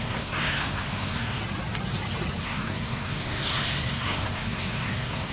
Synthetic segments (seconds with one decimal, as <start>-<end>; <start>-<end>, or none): 0.0-1.4; 2.4-5.3